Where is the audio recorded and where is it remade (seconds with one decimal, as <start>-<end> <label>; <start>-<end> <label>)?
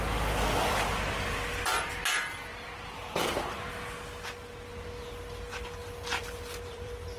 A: 0.0-2.5 recorded; 2.5-3.7 remade; 3.7-6.1 recorded; 6.1-7.2 remade